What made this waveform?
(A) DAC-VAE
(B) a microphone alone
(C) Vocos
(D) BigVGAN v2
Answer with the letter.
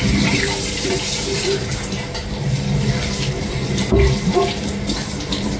D